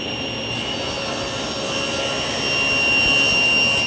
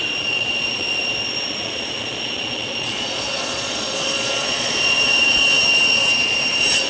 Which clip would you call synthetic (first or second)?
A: second